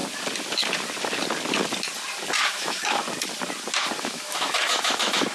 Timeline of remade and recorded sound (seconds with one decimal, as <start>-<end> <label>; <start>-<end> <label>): 0.0-2.4 recorded; 2.4-3.0 remade; 3.0-4.0 recorded; 4.0-5.3 remade